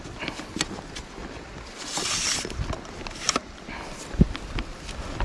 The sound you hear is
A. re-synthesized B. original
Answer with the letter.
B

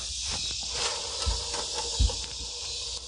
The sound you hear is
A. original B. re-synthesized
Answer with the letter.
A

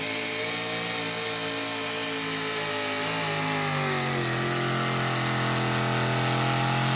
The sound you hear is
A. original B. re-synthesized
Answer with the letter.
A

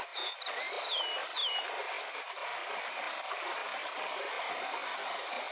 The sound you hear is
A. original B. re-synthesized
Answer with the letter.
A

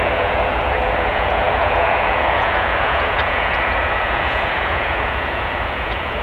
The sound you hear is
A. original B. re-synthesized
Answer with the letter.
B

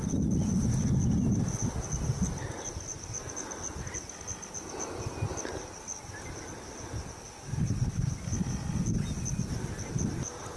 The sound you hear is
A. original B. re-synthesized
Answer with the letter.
A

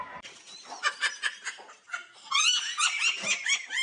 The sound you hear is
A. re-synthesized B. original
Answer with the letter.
B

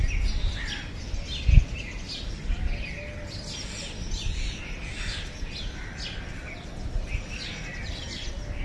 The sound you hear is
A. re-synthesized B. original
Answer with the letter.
B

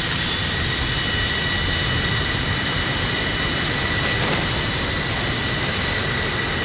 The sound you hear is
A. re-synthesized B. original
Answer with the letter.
B